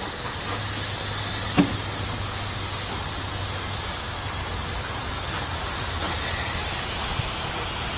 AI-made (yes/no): no